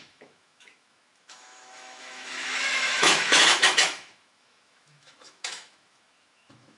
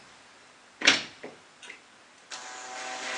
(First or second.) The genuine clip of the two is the second